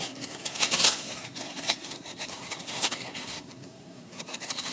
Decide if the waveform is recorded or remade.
remade